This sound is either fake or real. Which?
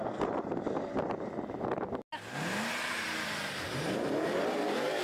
real